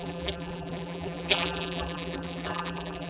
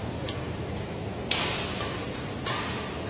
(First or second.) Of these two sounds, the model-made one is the first